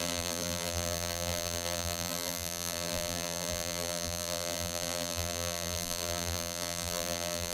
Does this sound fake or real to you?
fake